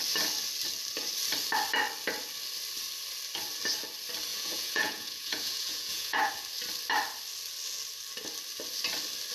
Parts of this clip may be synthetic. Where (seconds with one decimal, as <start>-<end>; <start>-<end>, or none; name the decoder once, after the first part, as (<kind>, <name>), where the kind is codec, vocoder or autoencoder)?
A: 4.3-6.3 (vocoder, Vocos)